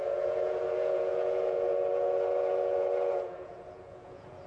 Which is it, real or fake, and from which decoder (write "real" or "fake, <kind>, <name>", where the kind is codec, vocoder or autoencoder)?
fake, vocoder, Vocos